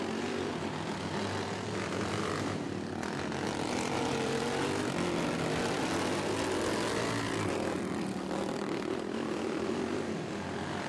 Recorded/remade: recorded